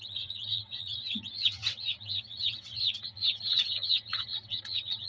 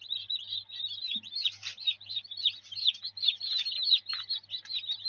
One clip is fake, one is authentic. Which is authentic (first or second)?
second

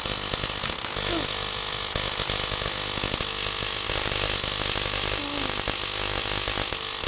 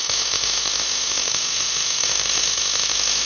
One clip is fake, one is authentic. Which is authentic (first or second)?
first